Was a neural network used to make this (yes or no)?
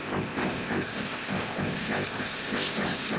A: yes